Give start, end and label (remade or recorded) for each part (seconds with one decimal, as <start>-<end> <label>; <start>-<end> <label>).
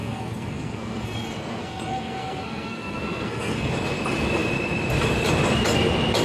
0.0-3.7 remade; 3.7-6.2 recorded